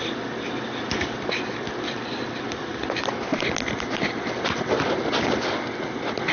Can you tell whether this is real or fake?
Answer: real